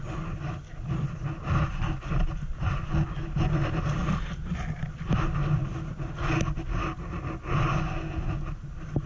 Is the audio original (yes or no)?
yes